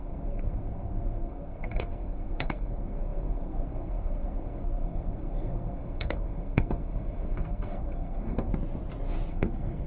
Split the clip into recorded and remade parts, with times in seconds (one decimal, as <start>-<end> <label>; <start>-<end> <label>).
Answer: 0.0-8.5 remade; 8.5-9.3 recorded; 9.3-9.9 remade